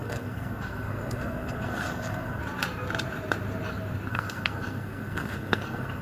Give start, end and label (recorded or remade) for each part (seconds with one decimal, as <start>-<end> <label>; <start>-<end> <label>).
0.0-2.4 remade; 2.4-4.1 recorded; 4.1-6.0 remade